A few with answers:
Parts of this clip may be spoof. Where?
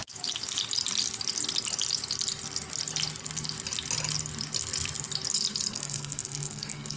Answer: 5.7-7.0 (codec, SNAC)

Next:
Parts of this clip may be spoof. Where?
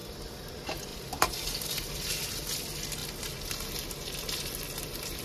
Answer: 0.0-0.5 (vocoder, BigVGAN v2); 0.9-1.9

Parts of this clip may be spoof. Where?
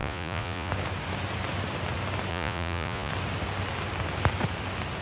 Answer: 0.0-0.7 (vocoder, Vocos); 2.3-3.1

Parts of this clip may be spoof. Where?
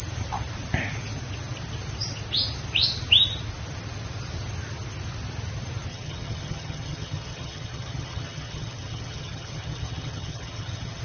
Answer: 5.9-11.0 (vocoder, HiFi-GAN)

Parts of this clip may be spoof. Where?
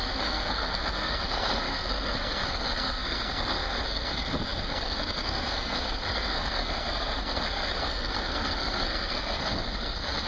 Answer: 0.0-10.3 (codec, SNAC)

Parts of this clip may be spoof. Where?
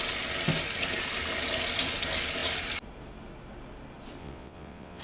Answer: 4.2-5.0 (vocoder, WaveNeXt)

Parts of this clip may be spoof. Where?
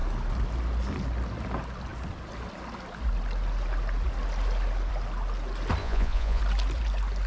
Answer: 5.8-6.4 (vocoder, Vocos)